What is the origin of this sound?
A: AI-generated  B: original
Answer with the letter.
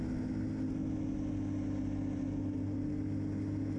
B